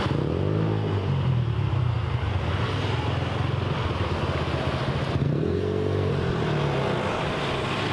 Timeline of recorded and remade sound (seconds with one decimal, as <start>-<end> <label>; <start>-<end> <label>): 0.0-5.2 recorded; 5.2-6.1 remade; 6.1-7.9 recorded